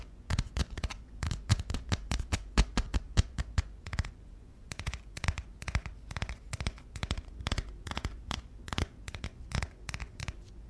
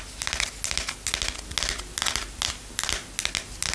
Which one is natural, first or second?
second